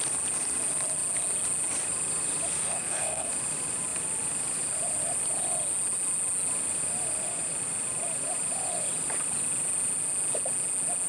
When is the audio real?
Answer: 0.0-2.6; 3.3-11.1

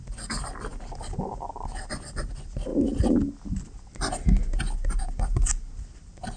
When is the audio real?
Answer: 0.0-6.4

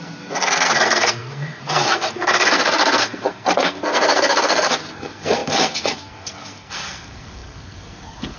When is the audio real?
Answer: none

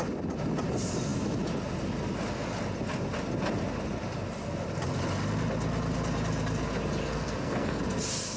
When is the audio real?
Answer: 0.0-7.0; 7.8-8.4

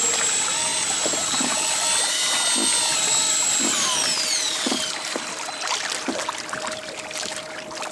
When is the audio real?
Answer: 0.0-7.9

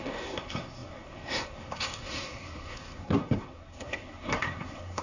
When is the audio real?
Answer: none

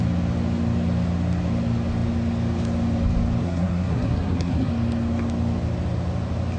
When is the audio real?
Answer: 0.0-3.4; 4.7-6.6